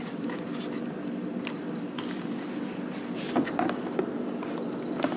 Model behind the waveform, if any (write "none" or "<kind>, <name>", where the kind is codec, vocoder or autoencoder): vocoder, BigVGAN v2